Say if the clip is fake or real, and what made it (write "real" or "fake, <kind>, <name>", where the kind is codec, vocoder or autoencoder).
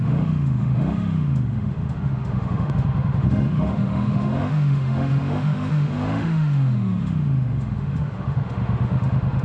fake, autoencoder, DAC-VAE